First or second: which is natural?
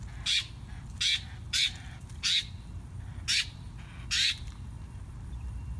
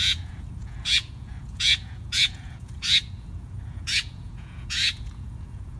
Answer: first